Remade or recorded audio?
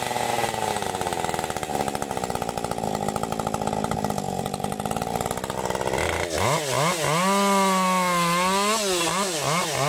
recorded